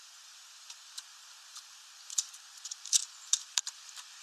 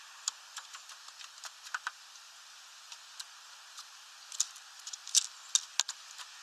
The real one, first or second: second